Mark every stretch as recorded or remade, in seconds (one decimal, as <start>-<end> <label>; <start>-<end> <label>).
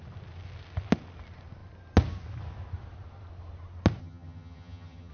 0.0-4.0 recorded; 4.0-5.1 remade